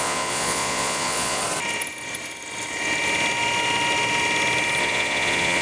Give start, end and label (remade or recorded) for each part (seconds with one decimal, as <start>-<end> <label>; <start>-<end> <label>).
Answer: 0.0-1.4 remade; 1.4-4.8 recorded; 4.8-5.6 remade